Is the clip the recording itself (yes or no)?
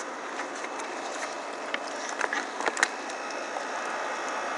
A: yes